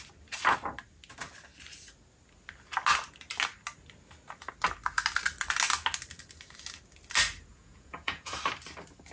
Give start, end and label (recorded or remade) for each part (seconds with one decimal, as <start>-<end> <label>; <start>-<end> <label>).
0.0-7.5 recorded; 7.5-8.4 remade; 8.4-9.1 recorded